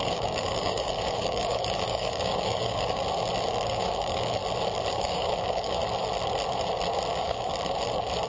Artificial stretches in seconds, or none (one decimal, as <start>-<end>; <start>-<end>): 0.0-3.0; 3.7-4.4; 4.9-5.8; 7.1-7.5